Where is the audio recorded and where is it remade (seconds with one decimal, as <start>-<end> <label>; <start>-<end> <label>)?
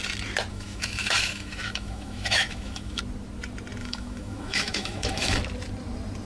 0.0-0.5 recorded; 0.5-3.0 remade; 3.0-3.8 recorded; 3.8-5.4 remade; 5.4-6.2 recorded